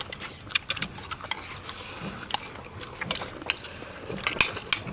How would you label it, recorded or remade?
recorded